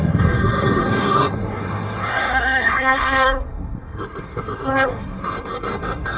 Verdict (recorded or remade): remade